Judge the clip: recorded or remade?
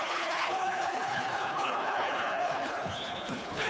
remade